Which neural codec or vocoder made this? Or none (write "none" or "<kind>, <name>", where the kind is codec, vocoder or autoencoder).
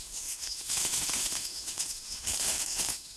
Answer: autoencoder, DAC-VAE